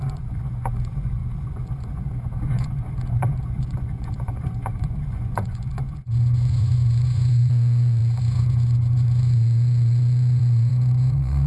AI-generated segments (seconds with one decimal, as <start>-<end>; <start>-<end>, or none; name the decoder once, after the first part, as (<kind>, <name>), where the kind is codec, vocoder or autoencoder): 0.0-11.5 (vocoder, Vocos)